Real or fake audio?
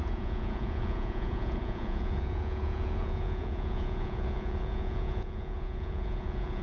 fake